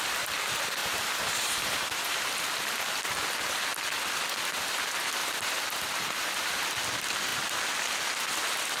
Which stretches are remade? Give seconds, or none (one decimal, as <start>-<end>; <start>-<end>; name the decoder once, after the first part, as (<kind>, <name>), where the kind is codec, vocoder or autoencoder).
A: 0.8-2.2 (vocoder, BigVGAN v2)